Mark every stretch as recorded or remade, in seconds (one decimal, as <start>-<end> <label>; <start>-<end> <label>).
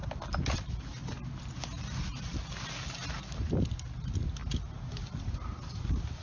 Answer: 0.0-6.2 recorded